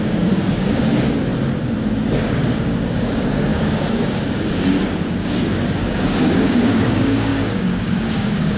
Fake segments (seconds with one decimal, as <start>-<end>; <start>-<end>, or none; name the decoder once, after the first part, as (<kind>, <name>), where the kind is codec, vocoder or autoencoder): 0.0-1.3 (codec, DAC); 2.2-8.6